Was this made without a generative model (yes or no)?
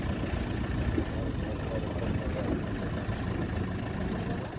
yes